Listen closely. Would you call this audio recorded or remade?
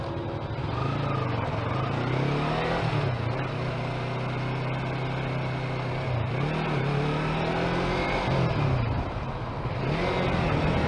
recorded